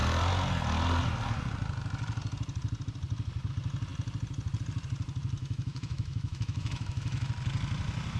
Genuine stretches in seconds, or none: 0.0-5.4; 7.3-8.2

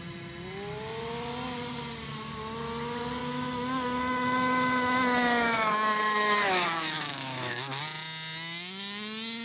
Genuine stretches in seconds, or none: 0.0-3.2; 7.8-9.4

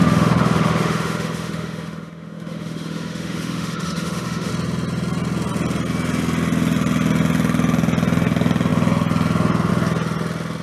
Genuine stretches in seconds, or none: 4.5-10.6

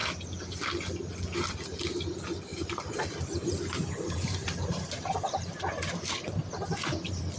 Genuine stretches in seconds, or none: 0.0-2.5; 5.9-7.4

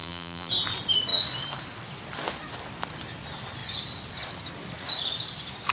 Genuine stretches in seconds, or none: 0.5-5.7